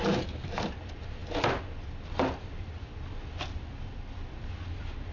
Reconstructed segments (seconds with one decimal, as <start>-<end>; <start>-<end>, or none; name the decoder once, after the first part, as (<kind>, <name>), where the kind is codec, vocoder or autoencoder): none